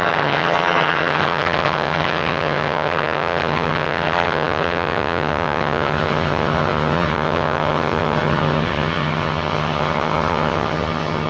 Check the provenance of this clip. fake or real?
fake